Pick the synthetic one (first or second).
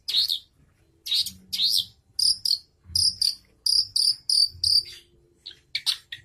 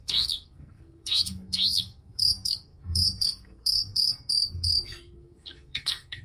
second